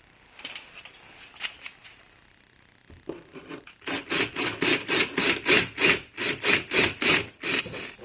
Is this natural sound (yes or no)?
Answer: yes